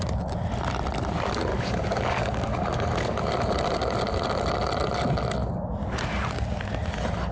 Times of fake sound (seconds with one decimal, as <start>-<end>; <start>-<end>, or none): 1.5-3.3